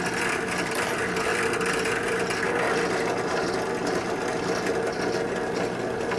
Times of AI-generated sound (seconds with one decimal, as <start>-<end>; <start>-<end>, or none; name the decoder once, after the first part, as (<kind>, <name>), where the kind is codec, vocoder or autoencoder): none